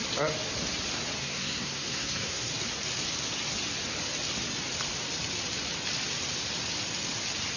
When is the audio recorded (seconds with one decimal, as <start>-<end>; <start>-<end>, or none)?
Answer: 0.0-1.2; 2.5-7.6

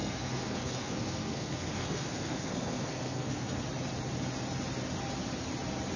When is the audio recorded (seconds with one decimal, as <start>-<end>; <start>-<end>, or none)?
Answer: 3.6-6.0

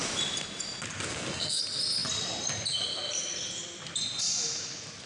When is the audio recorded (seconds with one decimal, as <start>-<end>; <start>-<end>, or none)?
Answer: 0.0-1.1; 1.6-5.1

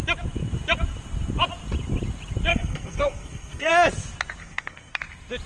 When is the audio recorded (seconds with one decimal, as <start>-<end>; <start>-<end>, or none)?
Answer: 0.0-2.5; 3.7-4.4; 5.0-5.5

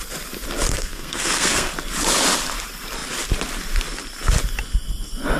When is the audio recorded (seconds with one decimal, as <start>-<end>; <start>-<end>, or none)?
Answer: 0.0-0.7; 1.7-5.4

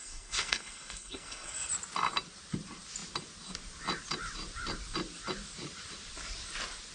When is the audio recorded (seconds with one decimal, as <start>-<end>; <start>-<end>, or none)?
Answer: 1.7-6.9